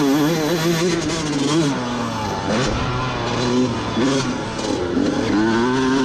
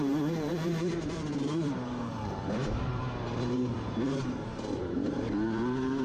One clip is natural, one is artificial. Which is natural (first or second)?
first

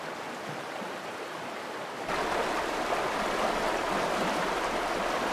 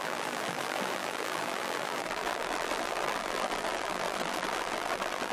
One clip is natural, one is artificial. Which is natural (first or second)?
first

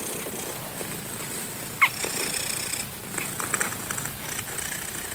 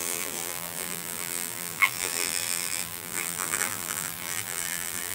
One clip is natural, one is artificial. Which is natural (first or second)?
first